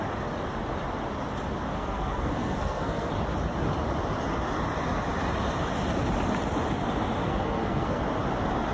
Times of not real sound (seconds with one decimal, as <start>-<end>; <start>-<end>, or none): 1.7-3.1; 7.2-8.0